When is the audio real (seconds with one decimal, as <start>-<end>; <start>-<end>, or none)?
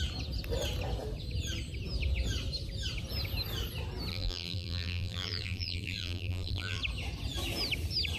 0.0-4.1; 6.8-8.2